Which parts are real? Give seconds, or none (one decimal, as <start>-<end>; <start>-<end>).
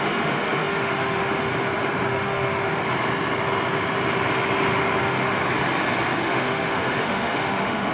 1.5-2.1; 2.8-5.0; 5.4-6.2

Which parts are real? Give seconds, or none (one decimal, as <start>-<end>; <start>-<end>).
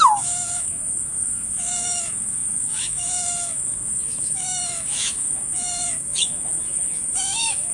none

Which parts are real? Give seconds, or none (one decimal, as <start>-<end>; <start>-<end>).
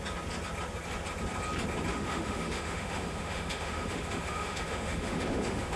0.0-1.9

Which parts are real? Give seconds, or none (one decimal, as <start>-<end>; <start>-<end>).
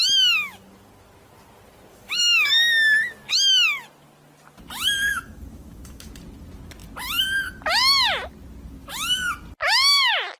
0.0-1.9; 2.5-5.1; 6.1-10.4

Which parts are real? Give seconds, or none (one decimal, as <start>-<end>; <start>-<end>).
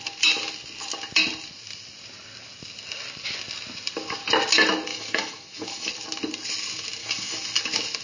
0.0-4.9; 5.9-7.0; 7.6-8.0